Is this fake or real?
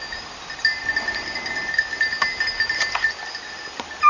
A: real